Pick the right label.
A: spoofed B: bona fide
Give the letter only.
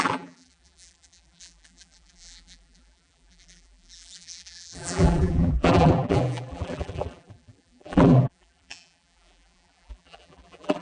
A